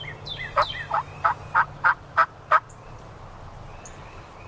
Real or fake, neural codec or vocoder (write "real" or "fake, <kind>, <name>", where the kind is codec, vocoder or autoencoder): real